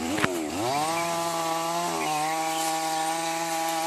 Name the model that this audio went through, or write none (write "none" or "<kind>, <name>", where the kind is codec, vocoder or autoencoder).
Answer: none